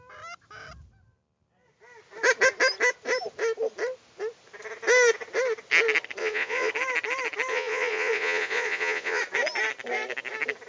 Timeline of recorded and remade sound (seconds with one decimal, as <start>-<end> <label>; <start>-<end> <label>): 0.0-6.2 recorded; 6.2-6.7 remade; 6.7-7.5 recorded; 7.5-9.2 remade; 9.2-10.7 recorded